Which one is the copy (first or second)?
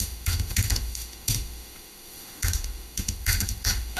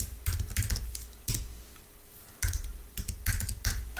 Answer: first